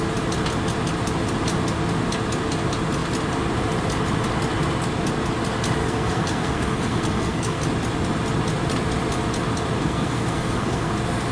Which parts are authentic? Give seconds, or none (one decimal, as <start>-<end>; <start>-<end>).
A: 0.0-5.8; 7.6-9.8; 10.9-11.3